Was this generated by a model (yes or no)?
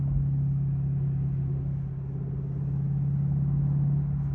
no